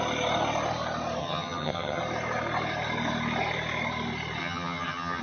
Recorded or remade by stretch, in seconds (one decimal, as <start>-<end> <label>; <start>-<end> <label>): 0.0-1.2 recorded; 1.2-2.0 remade; 2.0-4.4 recorded; 4.4-5.2 remade

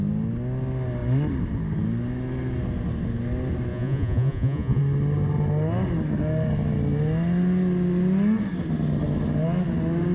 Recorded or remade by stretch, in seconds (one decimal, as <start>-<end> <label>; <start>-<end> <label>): 0.0-3.7 recorded; 3.7-4.8 remade; 4.8-10.1 recorded

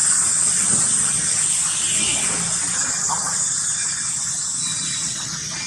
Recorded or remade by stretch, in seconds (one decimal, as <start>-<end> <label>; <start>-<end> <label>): 0.0-5.7 recorded

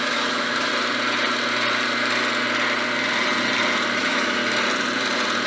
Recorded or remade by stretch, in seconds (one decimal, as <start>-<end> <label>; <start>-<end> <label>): 0.0-0.7 remade; 0.7-4.0 recorded; 4.0-4.4 remade; 4.4-5.5 recorded

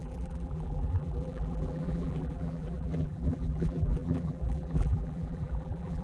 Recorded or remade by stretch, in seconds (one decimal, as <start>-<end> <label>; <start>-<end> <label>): 0.0-6.0 remade

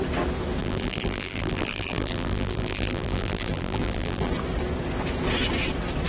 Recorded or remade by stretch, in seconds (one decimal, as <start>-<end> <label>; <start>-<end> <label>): 0.0-0.6 recorded; 0.6-4.3 remade; 4.3-6.1 recorded

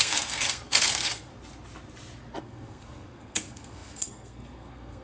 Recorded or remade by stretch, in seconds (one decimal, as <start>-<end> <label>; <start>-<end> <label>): 0.0-1.3 remade; 1.3-2.4 recorded; 2.4-5.0 remade